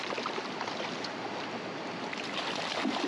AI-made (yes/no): no